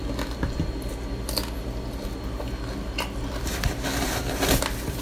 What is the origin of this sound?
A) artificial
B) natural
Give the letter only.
B